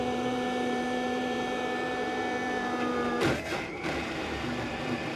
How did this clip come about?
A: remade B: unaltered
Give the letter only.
A